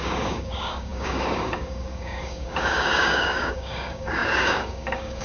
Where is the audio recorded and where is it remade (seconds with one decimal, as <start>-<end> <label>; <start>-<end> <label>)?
0.0-5.2 remade